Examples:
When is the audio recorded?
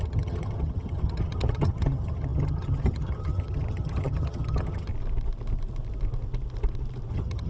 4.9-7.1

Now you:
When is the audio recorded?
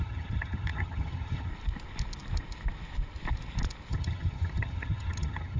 1.5-3.9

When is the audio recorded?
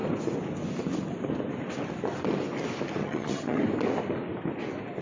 0.0-3.0; 3.6-5.0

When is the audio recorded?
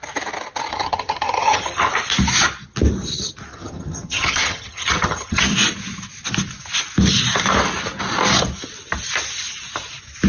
0.0-0.7; 1.9-3.5; 5.4-10.3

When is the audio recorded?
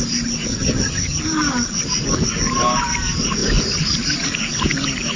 0.0-0.5; 1.2-5.2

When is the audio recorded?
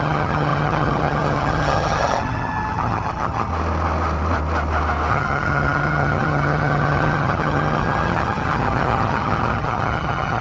3.5-5.1